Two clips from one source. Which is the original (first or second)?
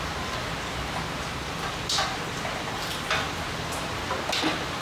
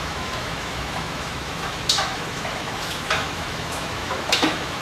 first